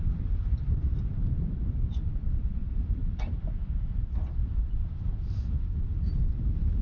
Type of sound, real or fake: fake